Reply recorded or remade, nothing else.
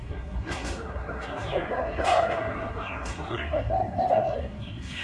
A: remade